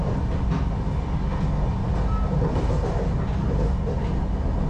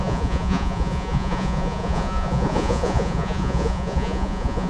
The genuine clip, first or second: first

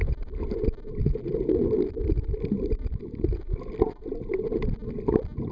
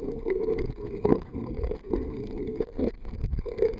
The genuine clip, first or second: first